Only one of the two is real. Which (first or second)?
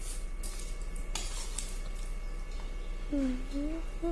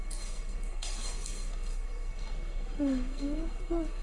first